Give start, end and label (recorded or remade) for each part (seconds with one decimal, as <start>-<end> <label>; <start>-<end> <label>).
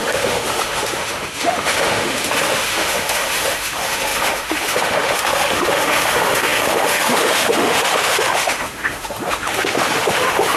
0.0-10.6 remade